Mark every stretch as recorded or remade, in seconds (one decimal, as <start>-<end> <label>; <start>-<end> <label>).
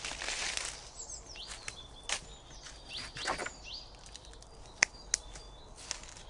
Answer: 0.0-6.3 recorded